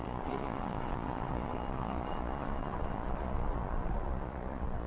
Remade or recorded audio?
remade